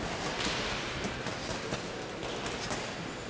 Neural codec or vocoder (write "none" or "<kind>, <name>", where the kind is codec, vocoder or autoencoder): none